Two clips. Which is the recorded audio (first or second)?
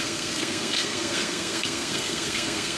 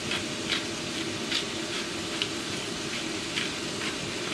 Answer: second